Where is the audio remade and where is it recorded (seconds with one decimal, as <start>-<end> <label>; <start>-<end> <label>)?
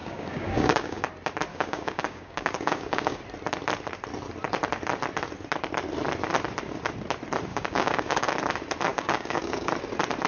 0.0-1.0 remade; 1.0-1.5 recorded; 1.5-3.2 remade; 3.2-7.5 recorded; 7.5-8.3 remade; 8.3-8.9 recorded; 8.9-9.7 remade; 9.7-10.3 recorded